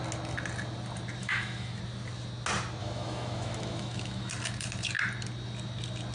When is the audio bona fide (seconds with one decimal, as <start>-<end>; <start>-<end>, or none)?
0.0-1.2; 1.8-2.8; 4.3-6.1